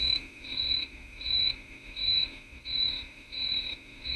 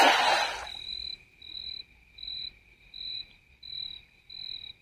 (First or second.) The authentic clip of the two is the second